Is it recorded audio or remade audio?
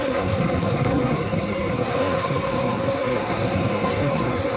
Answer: remade